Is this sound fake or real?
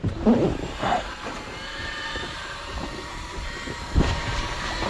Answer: fake